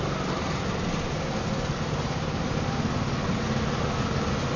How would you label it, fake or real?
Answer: real